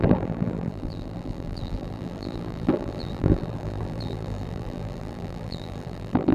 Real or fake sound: fake